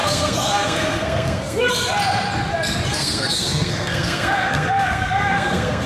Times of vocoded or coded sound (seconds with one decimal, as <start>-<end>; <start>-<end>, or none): 0.0-1.7; 2.9-5.9